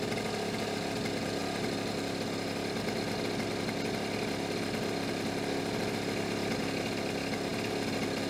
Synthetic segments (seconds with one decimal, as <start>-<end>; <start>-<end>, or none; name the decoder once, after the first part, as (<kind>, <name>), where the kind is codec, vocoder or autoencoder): none